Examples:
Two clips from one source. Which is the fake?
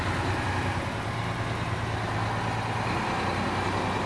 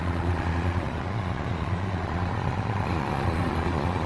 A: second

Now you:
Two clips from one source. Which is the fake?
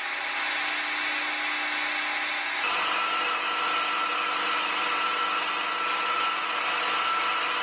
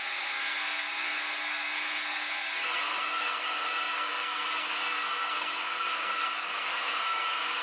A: second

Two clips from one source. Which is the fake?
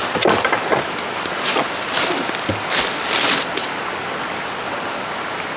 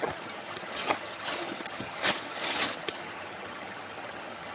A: second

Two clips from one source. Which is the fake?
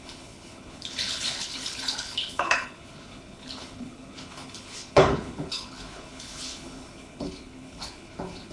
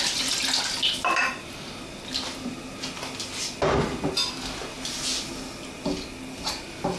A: first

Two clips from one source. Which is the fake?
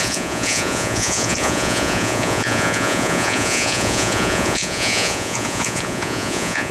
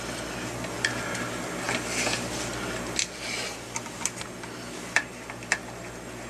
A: first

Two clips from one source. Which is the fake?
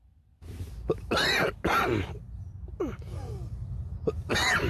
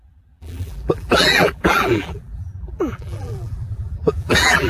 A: second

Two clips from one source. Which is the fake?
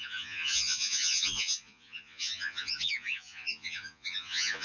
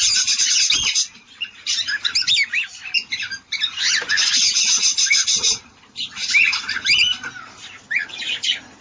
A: first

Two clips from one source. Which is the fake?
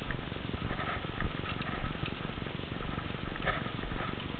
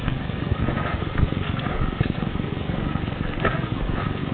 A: second